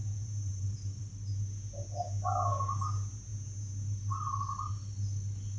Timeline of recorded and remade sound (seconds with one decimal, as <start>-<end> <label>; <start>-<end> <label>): 0.0-1.0 remade; 1.0-5.6 recorded